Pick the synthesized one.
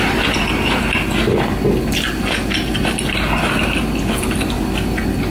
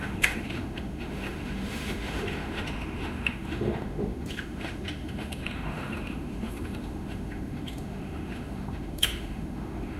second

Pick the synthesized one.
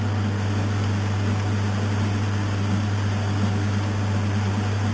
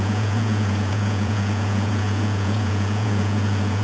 second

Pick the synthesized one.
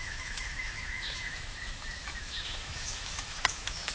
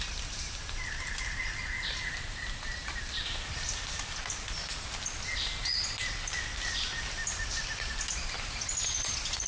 first